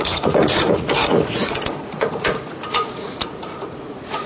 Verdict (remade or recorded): remade